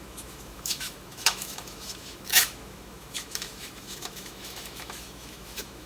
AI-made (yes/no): yes